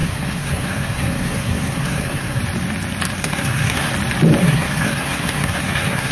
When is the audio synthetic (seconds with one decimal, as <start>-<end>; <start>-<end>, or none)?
0.0-2.4; 3.2-3.9; 4.4-6.1